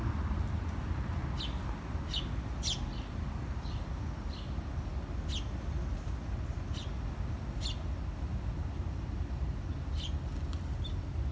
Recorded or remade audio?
recorded